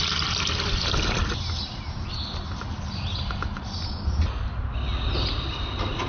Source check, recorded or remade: recorded